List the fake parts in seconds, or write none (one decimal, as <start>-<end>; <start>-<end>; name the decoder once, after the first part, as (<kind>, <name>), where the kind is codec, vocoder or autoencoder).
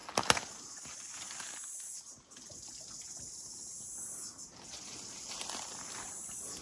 none